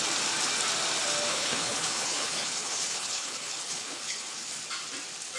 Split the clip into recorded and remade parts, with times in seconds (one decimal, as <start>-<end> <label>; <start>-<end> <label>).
0.0-1.3 recorded; 1.3-4.5 remade; 4.5-5.4 recorded